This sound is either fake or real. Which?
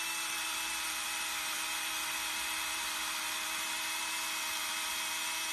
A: real